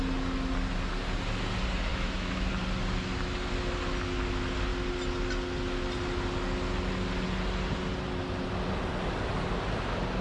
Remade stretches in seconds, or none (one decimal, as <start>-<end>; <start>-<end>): 1.9-2.5